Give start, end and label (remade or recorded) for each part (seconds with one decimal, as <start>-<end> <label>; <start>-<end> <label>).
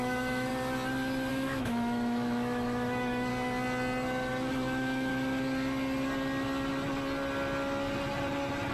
0.0-0.5 remade; 0.5-1.3 recorded; 1.3-3.3 remade; 3.3-4.5 recorded; 4.5-5.1 remade; 5.1-8.7 recorded